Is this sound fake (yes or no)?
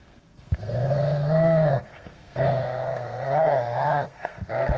yes